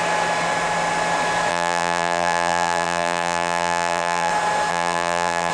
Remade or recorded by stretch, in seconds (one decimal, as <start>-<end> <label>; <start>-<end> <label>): 0.0-1.5 recorded; 1.5-4.3 remade; 4.3-4.7 recorded; 4.7-5.5 remade